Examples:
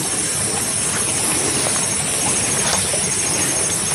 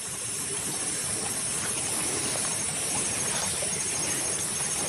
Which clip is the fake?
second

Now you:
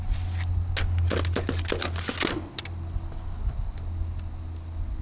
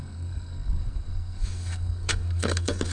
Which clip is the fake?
second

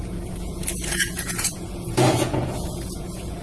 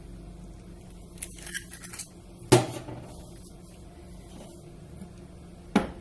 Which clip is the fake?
first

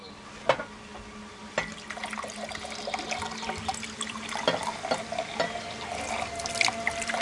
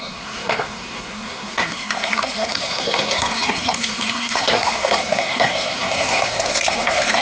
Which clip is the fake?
second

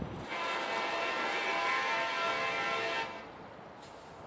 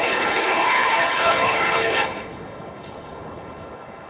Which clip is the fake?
second